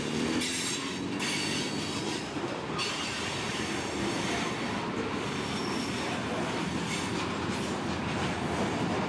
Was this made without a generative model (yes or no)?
yes